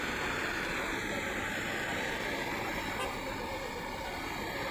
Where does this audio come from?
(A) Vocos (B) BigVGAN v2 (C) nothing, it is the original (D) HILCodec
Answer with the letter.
C